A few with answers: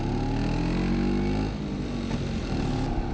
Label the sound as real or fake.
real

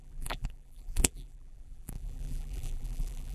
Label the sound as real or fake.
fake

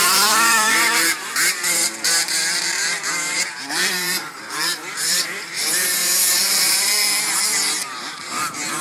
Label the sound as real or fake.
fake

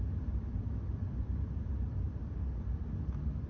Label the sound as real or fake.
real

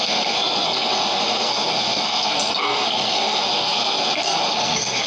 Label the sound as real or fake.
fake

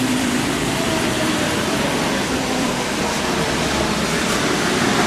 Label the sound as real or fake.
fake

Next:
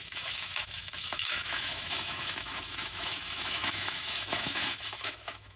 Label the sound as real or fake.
fake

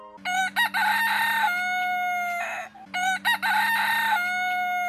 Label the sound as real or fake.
real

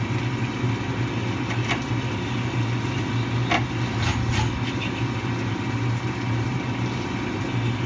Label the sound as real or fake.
real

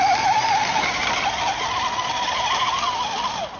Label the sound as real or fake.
real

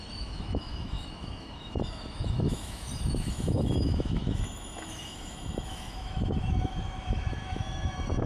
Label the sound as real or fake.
fake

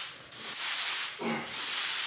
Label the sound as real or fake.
real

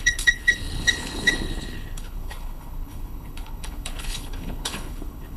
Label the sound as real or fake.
fake